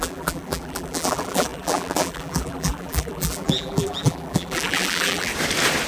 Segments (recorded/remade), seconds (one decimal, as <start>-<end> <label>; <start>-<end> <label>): 0.0-5.3 remade; 5.3-5.9 recorded